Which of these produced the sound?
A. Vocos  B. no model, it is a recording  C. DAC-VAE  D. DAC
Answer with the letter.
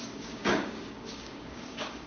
D